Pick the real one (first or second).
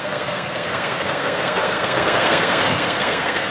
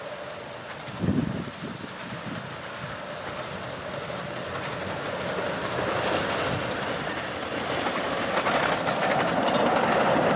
second